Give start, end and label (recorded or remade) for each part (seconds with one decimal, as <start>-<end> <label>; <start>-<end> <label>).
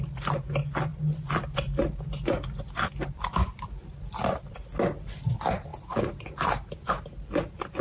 0.0-7.8 recorded